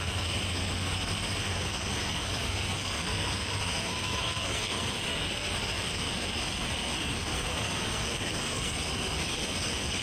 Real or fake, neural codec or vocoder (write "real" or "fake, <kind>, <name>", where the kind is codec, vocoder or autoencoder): fake, codec, SNAC